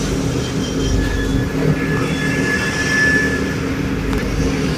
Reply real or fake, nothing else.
real